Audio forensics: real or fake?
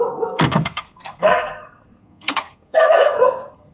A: fake